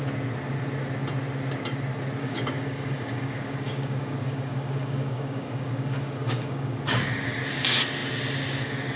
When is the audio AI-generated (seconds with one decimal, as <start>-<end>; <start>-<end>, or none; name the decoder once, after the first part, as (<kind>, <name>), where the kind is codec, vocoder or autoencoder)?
2.2-6.8 (codec, DAC)